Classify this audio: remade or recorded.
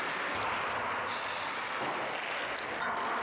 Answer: recorded